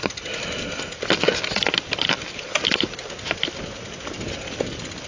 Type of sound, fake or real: real